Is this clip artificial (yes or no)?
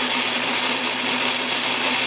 no